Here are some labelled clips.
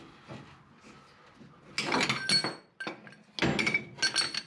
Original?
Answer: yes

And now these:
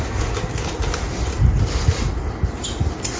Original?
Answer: yes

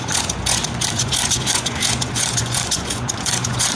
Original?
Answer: no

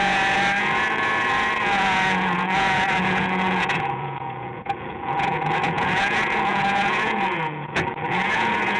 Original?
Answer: no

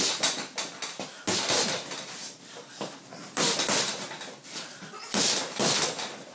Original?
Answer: yes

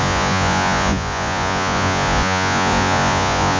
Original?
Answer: no